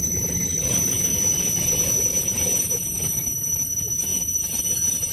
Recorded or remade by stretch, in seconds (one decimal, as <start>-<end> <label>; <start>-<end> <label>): 0.0-5.1 remade